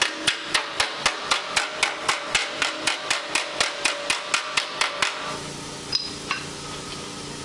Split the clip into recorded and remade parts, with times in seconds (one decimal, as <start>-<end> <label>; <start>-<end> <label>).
0.0-7.4 recorded